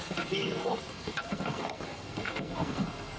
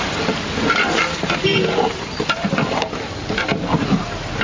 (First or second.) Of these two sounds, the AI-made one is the first